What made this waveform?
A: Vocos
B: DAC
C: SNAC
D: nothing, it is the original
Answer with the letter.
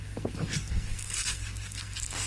C